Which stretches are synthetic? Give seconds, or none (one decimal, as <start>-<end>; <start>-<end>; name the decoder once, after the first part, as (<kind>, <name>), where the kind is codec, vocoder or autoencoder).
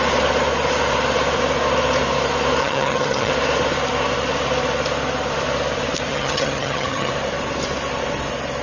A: 2.6-3.3 (vocoder, HiFi-GAN); 6.1-7.1